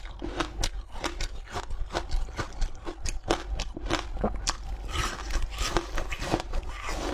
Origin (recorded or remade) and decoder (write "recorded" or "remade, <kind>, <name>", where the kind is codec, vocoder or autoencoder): recorded